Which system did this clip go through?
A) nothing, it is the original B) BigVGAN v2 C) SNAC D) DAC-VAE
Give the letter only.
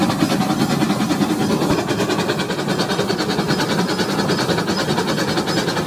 A